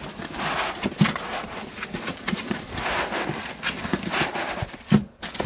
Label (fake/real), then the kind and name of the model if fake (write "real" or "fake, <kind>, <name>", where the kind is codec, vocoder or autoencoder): real